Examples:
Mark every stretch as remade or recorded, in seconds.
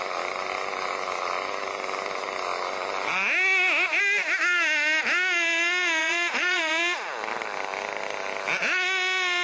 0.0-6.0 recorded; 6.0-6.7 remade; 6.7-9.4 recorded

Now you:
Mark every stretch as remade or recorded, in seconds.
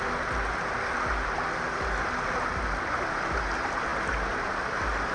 0.0-5.1 recorded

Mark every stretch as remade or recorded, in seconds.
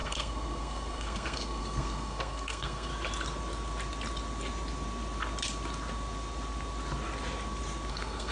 0.0-2.9 remade; 2.9-7.9 recorded; 7.9-8.3 remade